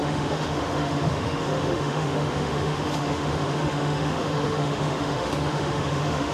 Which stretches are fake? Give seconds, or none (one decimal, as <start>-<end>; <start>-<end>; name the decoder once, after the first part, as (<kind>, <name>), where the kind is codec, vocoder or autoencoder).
0.0-6.3 (autoencoder, DAC-VAE)